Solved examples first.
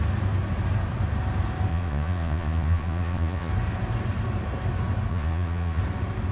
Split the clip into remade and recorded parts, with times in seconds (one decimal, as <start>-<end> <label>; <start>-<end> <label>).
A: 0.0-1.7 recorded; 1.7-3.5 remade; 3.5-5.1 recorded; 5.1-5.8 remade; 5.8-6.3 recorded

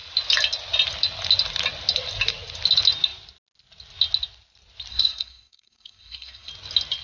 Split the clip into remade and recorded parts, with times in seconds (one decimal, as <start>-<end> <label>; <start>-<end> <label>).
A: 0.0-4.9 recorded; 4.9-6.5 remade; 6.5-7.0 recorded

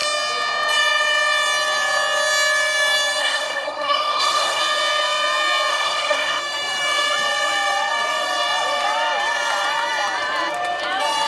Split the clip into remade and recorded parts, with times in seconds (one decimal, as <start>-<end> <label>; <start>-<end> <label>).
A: 0.0-3.2 recorded; 3.2-4.6 remade; 4.6-5.7 recorded; 5.7-6.4 remade; 6.4-11.3 recorded

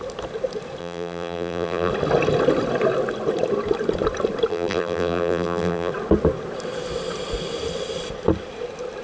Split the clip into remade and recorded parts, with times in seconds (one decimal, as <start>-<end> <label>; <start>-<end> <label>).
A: 0.0-0.8 recorded; 0.8-1.9 remade; 1.9-4.5 recorded; 4.5-5.9 remade; 5.9-9.0 recorded

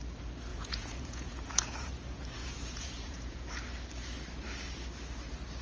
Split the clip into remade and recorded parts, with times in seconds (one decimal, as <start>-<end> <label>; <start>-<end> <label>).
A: 0.0-0.5 recorded; 0.5-1.9 remade; 1.9-2.4 recorded; 2.4-3.5 remade; 3.5-5.6 recorded

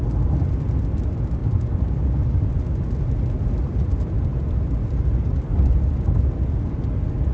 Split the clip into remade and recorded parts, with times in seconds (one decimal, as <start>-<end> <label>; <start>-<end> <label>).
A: 0.0-4.3 recorded; 4.3-6.8 remade; 6.8-7.3 recorded